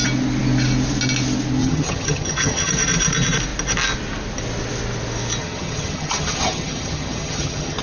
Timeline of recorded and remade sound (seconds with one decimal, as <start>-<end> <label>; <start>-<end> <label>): 0.0-1.6 recorded; 1.6-2.7 remade; 2.7-5.4 recorded; 5.4-7.8 remade